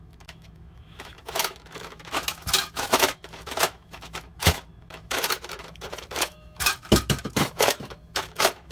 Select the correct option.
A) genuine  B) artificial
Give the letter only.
B